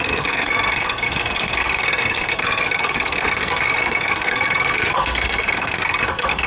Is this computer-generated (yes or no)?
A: yes